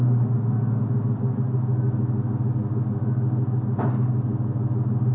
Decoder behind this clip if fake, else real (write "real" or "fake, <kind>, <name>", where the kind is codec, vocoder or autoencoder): real